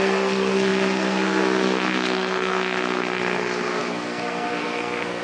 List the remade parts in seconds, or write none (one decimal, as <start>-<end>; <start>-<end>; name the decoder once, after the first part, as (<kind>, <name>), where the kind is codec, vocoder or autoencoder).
0.0-5.2 (codec, SNAC)